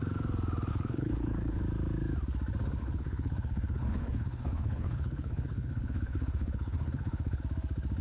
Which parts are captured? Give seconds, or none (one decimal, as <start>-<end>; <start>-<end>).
0.0-0.7; 1.6-2.8; 7.4-8.0